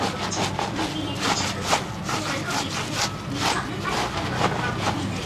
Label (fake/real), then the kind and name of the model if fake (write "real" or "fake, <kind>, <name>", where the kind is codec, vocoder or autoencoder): real